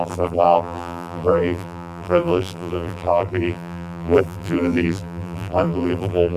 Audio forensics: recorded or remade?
remade